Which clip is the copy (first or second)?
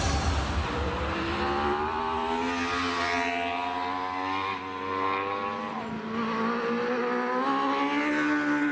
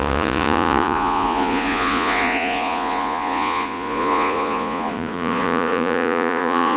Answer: second